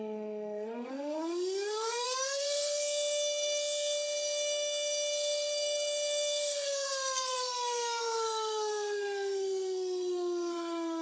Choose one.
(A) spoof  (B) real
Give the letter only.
A